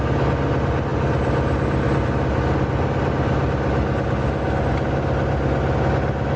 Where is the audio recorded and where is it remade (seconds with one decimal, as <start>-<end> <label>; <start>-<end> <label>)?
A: 0.0-6.4 recorded